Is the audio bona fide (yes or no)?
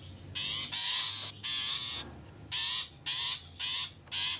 yes